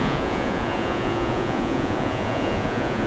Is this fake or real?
fake